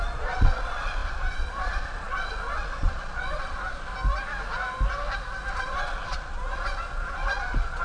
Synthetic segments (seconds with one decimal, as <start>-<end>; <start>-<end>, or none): 0.0-3.9; 5.5-7.8